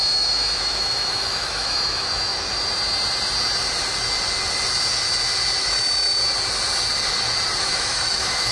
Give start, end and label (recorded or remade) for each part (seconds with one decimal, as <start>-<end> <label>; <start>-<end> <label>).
0.0-2.3 remade; 2.3-5.6 recorded; 5.6-6.2 remade; 6.2-7.6 recorded; 7.6-8.5 remade